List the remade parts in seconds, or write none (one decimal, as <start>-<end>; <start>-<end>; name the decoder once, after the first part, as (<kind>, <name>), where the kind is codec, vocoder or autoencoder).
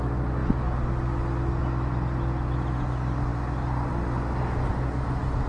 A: none